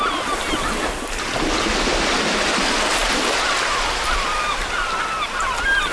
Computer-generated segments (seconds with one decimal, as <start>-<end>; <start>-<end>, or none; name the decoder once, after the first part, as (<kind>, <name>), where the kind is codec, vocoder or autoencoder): 4.5-5.4 (vocoder, BigVGAN v2)